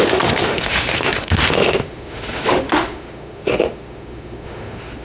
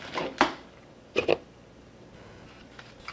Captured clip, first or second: second